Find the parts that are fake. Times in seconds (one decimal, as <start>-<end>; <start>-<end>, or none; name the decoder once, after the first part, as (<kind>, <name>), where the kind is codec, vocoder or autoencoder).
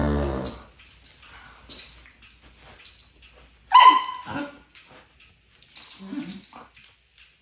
none